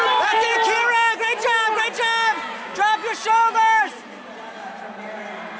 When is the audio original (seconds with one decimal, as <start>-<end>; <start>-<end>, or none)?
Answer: 0.0-3.2